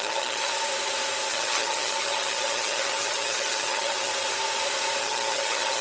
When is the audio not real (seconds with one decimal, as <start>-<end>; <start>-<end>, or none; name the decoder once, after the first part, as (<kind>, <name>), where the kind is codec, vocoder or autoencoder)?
0.0-0.5 (vocoder, HiFi-GAN); 1.3-4.1; 5.0-5.8